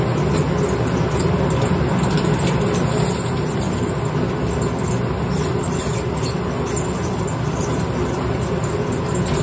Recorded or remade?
recorded